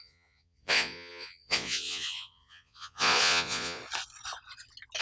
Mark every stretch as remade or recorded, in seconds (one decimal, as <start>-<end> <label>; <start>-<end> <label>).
0.0-3.8 remade; 3.8-5.0 recorded